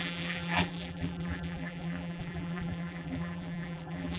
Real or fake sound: fake